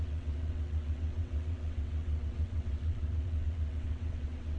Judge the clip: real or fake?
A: fake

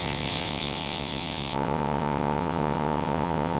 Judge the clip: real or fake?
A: fake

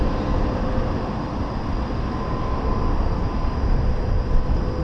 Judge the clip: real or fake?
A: real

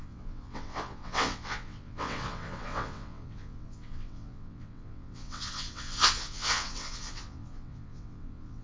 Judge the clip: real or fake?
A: fake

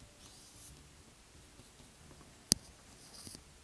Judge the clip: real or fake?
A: real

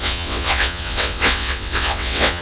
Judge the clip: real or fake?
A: fake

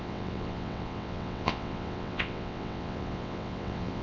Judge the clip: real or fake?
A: fake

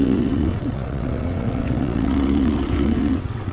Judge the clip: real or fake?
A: fake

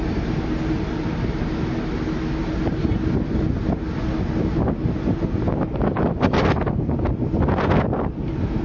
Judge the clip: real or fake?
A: real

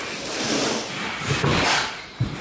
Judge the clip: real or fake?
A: real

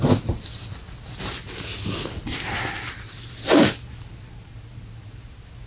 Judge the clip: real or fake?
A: real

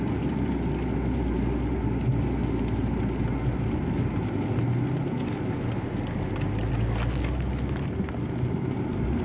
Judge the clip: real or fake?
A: real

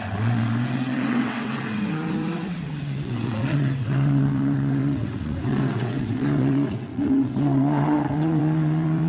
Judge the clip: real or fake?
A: fake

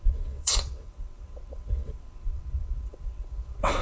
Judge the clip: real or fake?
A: fake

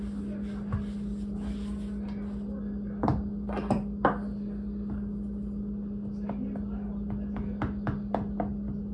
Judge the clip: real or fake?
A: real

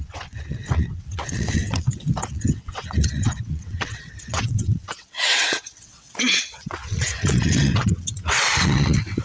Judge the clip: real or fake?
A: fake